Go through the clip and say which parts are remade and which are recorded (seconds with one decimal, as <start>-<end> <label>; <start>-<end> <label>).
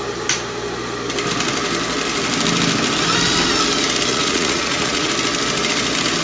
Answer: 0.0-4.1 recorded; 4.1-5.1 remade; 5.1-6.2 recorded